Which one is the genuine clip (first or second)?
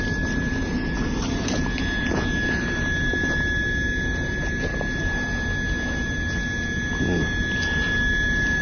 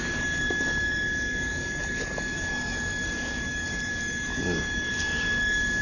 first